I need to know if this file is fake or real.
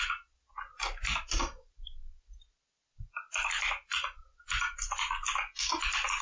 real